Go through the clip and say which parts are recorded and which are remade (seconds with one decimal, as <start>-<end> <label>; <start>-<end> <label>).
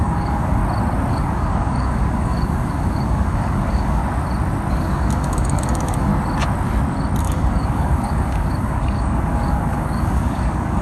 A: 0.0-0.6 remade; 0.6-1.1 recorded; 1.1-4.0 remade; 4.0-4.7 recorded; 4.7-6.1 remade; 6.1-7.2 recorded; 7.2-10.8 remade